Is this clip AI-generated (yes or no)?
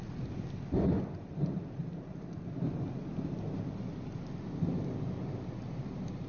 no